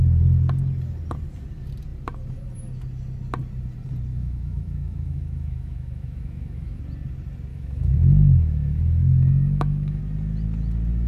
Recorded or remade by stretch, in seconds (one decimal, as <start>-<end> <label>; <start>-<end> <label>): 0.0-4.1 recorded; 4.1-6.8 remade; 6.8-7.5 recorded; 7.5-10.0 remade; 10.0-11.1 recorded